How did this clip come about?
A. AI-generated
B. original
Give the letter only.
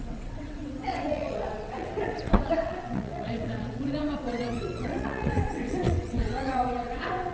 A